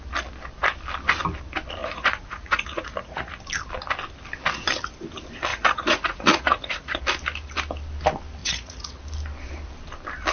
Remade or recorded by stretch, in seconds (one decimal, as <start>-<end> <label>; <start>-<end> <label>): 0.0-1.8 recorded; 1.8-3.4 remade; 3.4-5.5 recorded; 5.5-7.0 remade; 7.0-8.4 recorded; 8.4-9.0 remade; 9.0-10.3 recorded